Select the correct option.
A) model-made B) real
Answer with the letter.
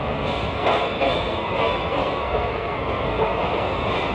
A